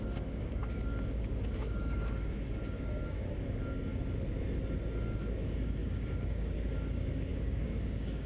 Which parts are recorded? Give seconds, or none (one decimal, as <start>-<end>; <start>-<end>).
3.9-4.8